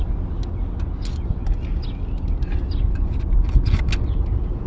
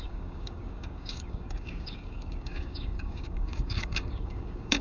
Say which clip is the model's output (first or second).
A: second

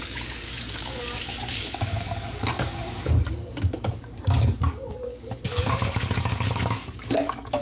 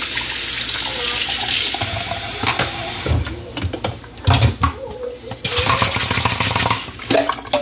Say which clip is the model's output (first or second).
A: first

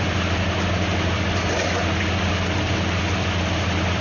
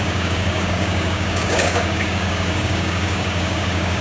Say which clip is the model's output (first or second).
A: second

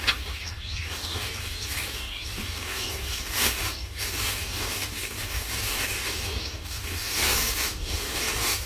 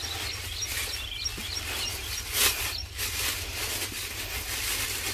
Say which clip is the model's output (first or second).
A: first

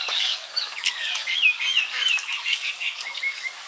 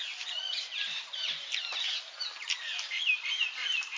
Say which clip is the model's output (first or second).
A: first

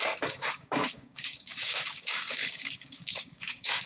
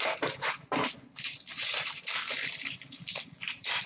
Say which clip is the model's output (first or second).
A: first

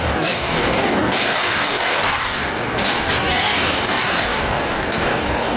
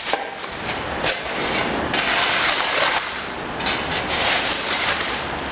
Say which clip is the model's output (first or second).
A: first